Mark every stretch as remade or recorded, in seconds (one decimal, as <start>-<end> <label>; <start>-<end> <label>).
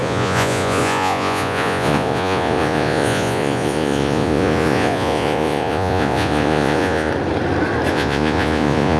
0.0-7.1 remade; 7.1-7.9 recorded; 7.9-9.0 remade